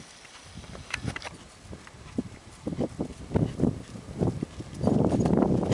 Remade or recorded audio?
recorded